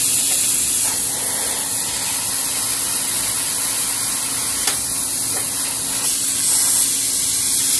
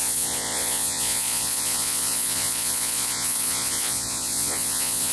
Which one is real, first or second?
first